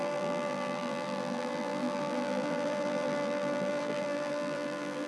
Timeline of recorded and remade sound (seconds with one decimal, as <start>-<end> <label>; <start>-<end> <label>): 0.0-5.1 remade